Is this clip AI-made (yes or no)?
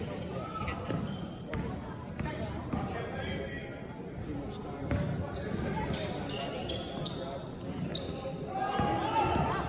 no